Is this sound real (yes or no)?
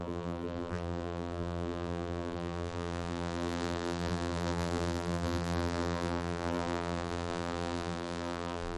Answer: no